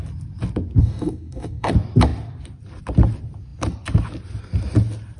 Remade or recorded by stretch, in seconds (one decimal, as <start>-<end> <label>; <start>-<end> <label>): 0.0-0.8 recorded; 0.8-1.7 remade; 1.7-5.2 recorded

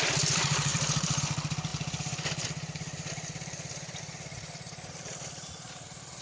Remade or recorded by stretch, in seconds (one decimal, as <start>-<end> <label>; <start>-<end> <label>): 0.0-6.2 remade

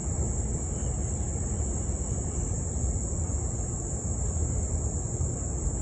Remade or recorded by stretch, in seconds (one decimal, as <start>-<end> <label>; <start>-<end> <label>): 0.0-5.8 recorded

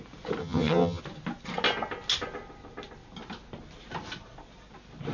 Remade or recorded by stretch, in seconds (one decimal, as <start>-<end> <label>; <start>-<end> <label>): 0.0-0.4 recorded; 0.4-1.0 remade; 1.0-5.1 recorded

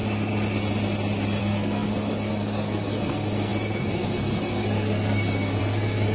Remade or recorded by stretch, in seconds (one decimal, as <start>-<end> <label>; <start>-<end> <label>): 0.0-1.4 recorded; 1.4-6.1 remade

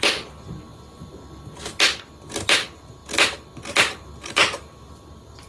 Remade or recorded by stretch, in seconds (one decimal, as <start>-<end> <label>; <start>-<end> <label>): 0.0-5.5 recorded

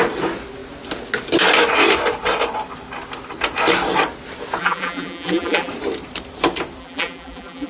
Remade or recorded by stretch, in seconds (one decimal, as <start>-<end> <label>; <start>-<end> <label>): 0.0-4.6 recorded; 4.6-5.7 remade; 5.7-6.8 recorded; 6.8-7.7 remade

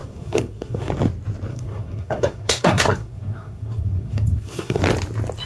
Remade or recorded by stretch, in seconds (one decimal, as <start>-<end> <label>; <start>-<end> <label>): 0.0-0.9 remade; 0.9-1.5 recorded; 1.5-4.8 remade; 4.8-5.5 recorded